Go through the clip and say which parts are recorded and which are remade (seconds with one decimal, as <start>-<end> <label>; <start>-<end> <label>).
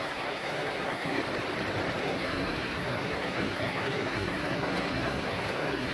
0.0-1.2 remade; 1.2-2.0 recorded; 2.0-5.9 remade